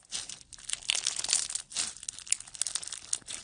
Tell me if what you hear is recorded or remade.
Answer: recorded